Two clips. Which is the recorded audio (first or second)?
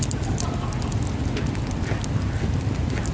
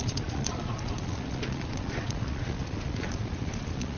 first